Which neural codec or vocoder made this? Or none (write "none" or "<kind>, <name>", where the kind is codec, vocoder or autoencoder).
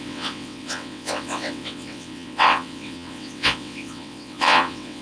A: vocoder, WaveNeXt